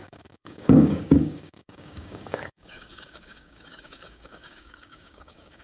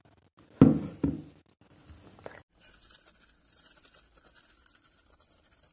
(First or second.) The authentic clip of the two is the second